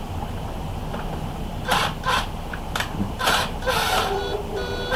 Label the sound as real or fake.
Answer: real